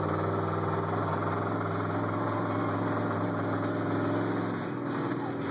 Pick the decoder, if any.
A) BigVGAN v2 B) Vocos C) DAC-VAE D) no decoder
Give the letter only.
D